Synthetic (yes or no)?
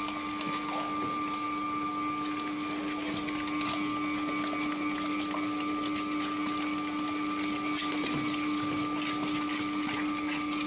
no